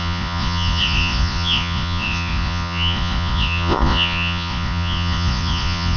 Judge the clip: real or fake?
fake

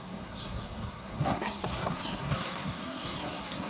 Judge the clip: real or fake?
fake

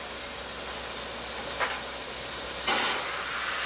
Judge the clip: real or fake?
real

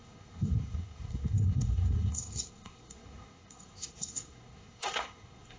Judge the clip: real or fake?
fake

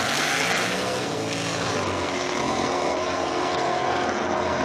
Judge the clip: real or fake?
fake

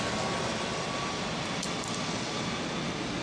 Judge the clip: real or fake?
real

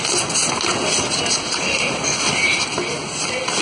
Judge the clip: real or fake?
real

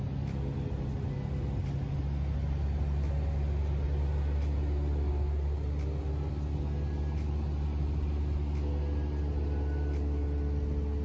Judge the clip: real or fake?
real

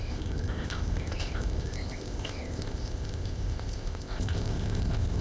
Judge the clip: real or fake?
fake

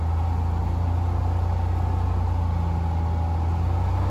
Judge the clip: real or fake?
real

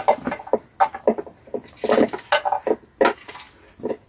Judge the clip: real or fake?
real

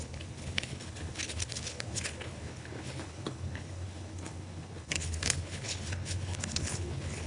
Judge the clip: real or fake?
fake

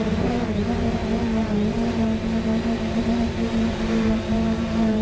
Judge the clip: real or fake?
fake